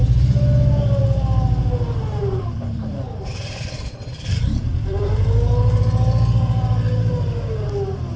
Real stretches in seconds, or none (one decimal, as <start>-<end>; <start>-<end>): 0.0-1.6; 5.8-8.2